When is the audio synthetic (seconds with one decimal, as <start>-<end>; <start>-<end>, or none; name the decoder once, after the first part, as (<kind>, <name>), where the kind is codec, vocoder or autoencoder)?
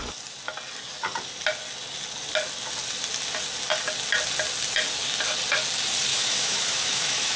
6.1-7.4 (autoencoder, DAC-VAE)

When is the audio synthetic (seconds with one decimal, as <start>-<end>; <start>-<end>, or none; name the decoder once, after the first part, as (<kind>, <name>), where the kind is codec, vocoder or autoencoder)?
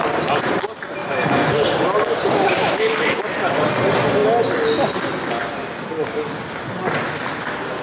2.6-3.2 (autoencoder, DAC-VAE)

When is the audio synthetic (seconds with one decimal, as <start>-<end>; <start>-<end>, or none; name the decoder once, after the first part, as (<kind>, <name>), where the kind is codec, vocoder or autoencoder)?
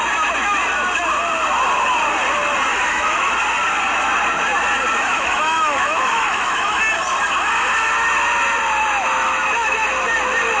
2.7-3.3 (autoencoder, DAC-VAE); 5.1-6.8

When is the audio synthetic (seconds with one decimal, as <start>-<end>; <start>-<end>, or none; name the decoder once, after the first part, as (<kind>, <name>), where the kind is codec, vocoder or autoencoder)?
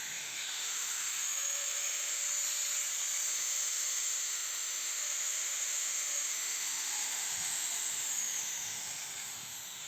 0.0-2.2 (autoencoder, DAC-VAE); 3.3-9.9